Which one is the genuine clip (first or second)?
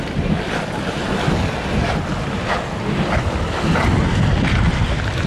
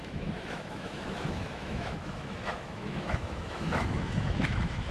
first